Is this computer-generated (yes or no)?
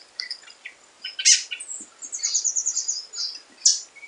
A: no